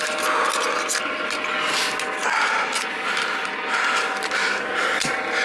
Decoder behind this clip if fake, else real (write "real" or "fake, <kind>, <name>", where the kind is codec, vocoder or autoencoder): real